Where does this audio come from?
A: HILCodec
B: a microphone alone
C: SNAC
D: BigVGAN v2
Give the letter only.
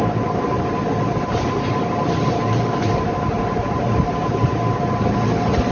D